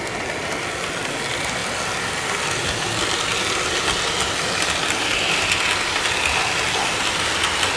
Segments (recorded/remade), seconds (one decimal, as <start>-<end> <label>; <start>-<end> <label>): 0.0-7.8 recorded